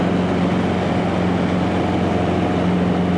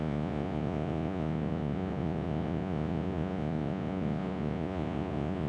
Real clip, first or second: first